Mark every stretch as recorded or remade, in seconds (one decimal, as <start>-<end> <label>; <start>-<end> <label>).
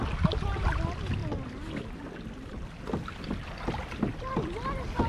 0.0-5.1 recorded